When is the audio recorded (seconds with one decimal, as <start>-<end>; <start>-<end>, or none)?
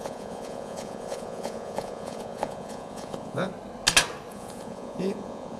3.5-4.3